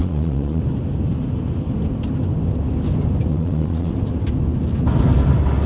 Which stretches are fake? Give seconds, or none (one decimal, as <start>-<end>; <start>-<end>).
0.0-0.6; 3.3-3.9